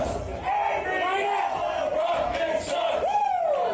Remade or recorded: recorded